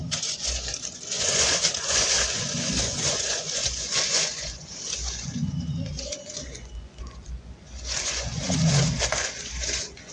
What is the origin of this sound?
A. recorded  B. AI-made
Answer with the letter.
B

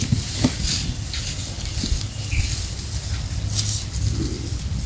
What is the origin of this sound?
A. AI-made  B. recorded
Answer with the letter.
B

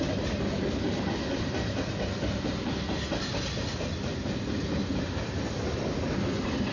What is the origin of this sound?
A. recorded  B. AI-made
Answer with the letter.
A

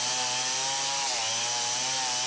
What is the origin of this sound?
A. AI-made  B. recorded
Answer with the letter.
B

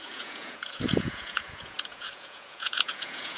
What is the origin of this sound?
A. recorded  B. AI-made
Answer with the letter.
B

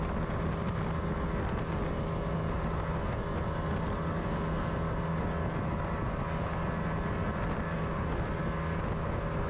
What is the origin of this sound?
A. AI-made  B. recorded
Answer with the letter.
B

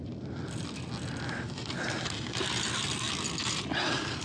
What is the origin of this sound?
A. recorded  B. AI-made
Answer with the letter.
A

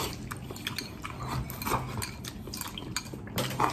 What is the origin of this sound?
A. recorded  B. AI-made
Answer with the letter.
A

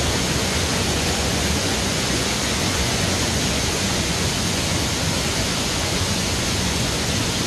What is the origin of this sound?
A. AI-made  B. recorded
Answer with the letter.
A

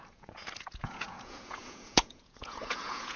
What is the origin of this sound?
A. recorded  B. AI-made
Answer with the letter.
B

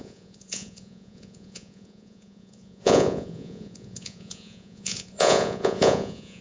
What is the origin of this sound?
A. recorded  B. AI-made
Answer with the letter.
B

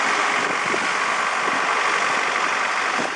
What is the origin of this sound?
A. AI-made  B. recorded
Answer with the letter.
B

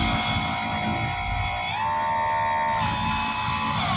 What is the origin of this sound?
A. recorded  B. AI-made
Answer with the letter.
A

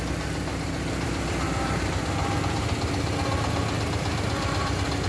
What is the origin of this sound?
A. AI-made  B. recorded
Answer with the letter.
B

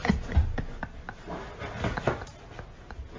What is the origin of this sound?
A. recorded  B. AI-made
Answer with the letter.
A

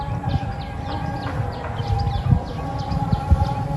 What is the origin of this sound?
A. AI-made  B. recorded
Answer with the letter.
B